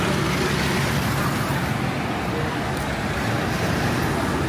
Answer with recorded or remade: recorded